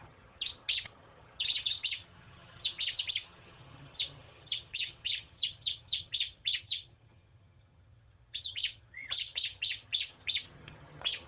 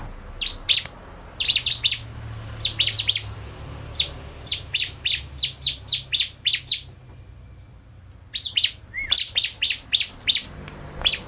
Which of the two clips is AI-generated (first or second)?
first